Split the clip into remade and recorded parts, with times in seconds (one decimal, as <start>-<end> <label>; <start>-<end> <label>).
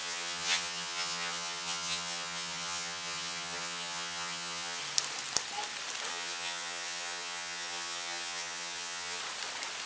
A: 0.0-4.8 remade; 4.8-6.1 recorded; 6.1-9.2 remade; 9.2-9.9 recorded